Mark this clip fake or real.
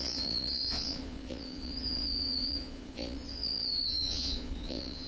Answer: fake